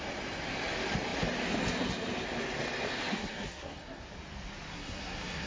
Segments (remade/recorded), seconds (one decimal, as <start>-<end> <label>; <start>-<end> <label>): 0.0-3.1 recorded; 3.1-4.0 remade; 4.0-4.7 recorded; 4.7-5.5 remade